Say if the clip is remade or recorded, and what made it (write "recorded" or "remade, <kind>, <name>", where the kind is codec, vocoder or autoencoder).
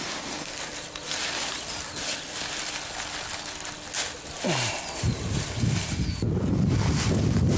recorded